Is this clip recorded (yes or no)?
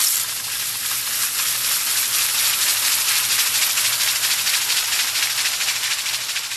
yes